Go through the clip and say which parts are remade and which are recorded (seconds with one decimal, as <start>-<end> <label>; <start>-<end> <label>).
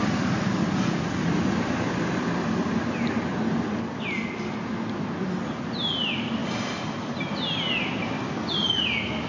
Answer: 0.0-9.3 recorded